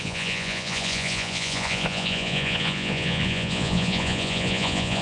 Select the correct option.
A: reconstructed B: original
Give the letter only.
A